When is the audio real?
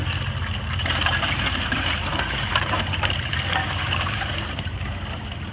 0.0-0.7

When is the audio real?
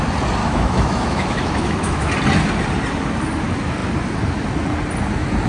0.0-0.4; 2.1-5.5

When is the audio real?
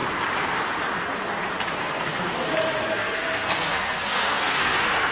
0.0-1.8; 2.3-2.9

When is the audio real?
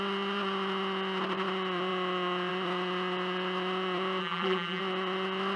0.0-4.2; 4.8-5.6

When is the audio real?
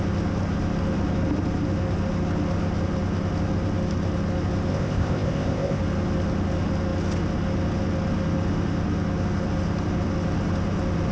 0.0-4.7; 5.8-11.1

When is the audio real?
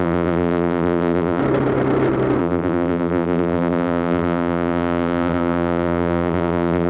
1.4-2.4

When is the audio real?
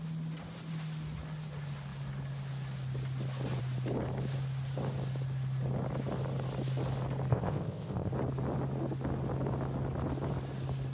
0.0-7.3; 8.1-10.9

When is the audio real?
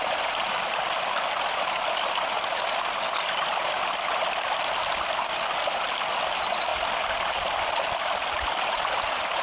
0.0-9.4